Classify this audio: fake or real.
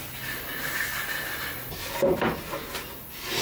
real